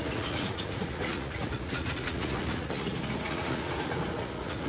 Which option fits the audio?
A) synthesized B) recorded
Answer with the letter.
A